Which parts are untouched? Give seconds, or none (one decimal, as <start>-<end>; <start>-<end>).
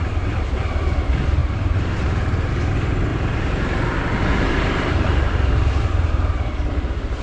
0.0-1.4; 2.5-3.1; 6.5-7.2